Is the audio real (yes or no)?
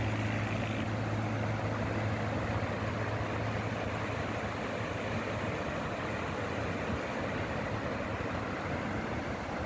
yes